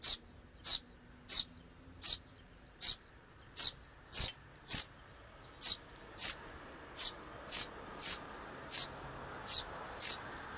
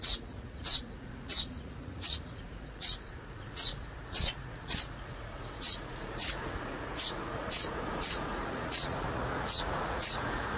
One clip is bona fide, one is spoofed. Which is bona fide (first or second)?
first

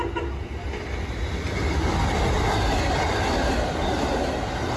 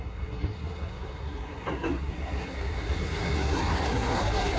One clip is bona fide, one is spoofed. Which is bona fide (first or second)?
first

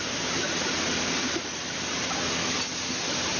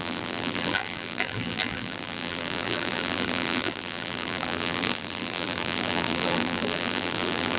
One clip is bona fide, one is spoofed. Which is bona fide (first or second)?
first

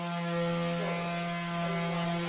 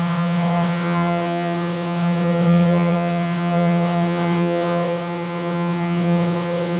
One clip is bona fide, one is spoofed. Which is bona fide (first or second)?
first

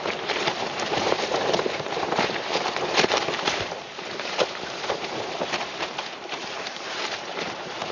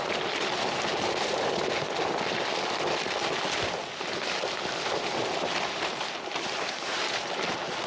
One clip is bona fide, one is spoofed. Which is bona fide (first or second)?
second